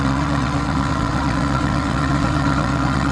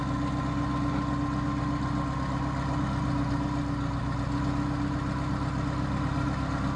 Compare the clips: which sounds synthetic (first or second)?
first